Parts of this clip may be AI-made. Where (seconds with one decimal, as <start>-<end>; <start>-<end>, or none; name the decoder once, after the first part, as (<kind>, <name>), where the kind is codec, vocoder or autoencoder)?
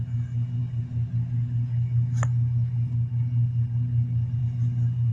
none